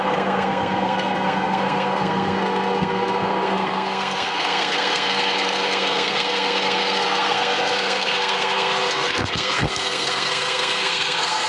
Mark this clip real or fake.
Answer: fake